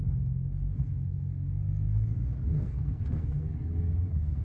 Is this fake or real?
fake